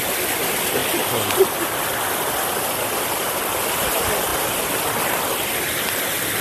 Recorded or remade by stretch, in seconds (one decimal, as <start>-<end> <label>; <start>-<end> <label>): 0.0-6.4 recorded